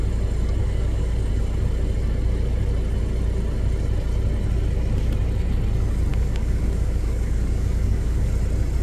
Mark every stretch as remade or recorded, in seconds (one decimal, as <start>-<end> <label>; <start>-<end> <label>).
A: 0.0-0.6 recorded; 0.6-1.3 remade; 1.3-6.1 recorded; 6.1-8.3 remade; 8.3-8.8 recorded